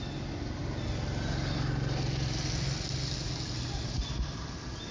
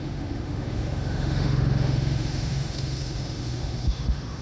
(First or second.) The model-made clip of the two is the second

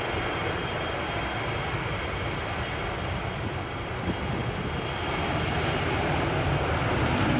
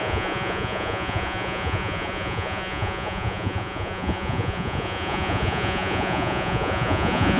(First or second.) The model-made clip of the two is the second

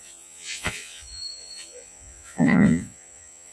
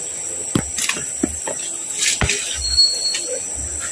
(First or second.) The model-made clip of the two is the first